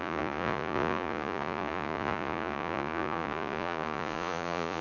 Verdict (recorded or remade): remade